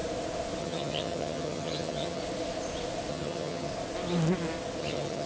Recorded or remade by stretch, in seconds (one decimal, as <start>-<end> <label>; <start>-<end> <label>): 0.0-0.6 recorded; 0.6-2.2 remade; 2.2-3.1 recorded; 3.1-3.7 remade; 3.7-4.8 recorded; 4.8-5.3 remade